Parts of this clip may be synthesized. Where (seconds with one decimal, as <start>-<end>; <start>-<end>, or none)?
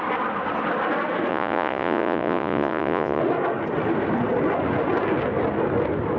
1.3-3.2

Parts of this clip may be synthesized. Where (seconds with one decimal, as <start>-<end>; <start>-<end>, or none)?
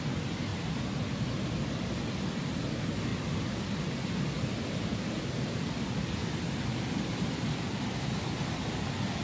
none